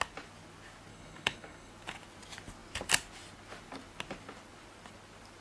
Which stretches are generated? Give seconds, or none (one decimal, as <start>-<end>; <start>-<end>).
0.9-1.7